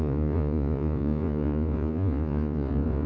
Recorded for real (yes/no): no